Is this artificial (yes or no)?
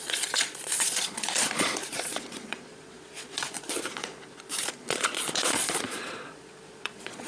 yes